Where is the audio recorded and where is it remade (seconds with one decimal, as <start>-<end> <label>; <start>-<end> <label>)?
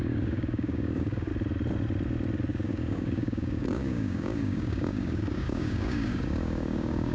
0.0-1.3 remade; 1.3-2.5 recorded; 2.5-7.1 remade